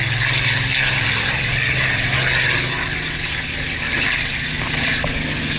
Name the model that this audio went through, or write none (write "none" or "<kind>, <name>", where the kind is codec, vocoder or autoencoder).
none